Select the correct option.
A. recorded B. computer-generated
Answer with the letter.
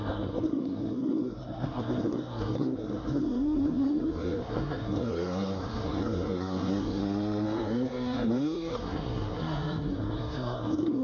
B